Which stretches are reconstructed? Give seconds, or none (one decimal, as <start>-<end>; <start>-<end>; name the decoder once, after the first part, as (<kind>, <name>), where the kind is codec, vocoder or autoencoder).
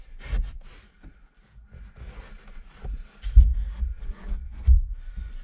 none